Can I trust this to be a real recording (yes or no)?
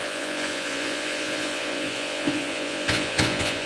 no